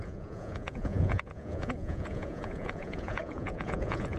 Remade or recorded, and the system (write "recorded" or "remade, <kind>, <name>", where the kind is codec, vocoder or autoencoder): remade, vocoder, Vocos